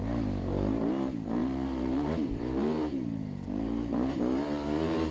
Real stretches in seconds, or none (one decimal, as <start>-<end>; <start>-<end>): none